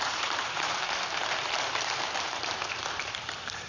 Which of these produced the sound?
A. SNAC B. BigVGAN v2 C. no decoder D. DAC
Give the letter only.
B